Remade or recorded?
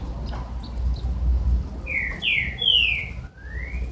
recorded